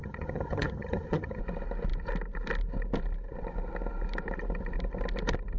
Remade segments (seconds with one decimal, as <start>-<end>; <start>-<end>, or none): 0.0-1.4